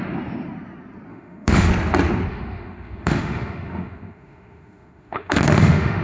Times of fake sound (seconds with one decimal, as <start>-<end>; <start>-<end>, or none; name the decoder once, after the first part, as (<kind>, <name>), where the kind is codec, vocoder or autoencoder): 1.1-1.7 (autoencoder, DAC-VAE); 2.3-6.0